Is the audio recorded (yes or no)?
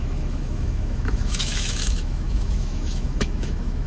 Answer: no